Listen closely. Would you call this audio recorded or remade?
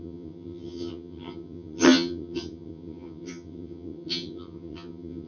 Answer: remade